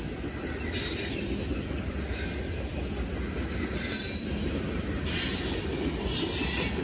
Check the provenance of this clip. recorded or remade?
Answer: recorded